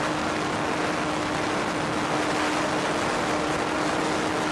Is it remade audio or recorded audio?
recorded